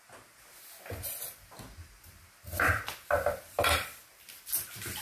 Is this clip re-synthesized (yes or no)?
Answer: no